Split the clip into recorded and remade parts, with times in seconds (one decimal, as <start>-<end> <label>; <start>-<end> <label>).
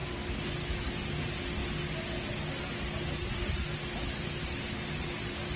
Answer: 0.0-5.6 recorded